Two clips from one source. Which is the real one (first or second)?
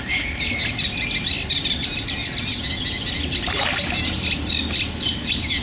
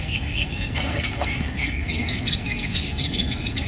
first